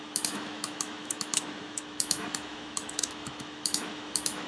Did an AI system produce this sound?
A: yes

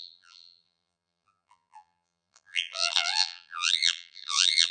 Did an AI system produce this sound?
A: yes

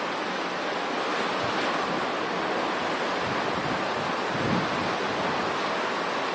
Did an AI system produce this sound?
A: no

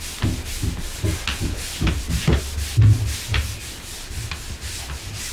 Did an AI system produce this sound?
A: no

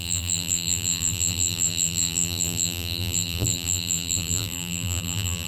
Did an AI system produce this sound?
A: yes